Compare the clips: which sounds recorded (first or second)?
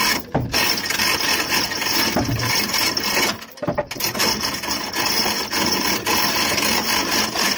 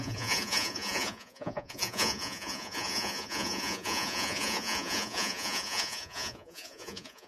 first